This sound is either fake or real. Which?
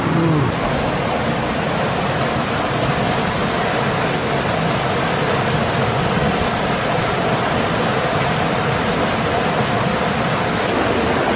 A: real